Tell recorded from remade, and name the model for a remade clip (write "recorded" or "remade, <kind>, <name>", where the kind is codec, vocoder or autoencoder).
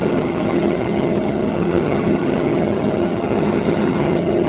remade, vocoder, HiFi-GAN